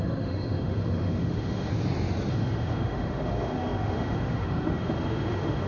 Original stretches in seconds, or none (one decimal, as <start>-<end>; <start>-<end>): 1.7-2.3